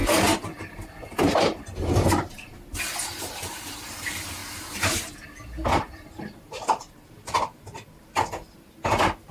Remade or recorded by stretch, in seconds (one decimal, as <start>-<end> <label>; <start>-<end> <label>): 0.0-4.4 recorded; 4.4-5.1 remade; 5.1-9.3 recorded